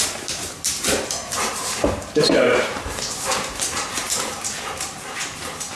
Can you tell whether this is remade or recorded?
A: remade